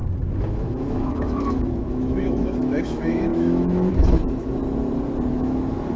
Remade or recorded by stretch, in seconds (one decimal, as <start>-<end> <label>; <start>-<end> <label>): 0.0-0.5 recorded; 0.5-4.6 remade; 4.6-5.3 recorded; 5.3-6.0 remade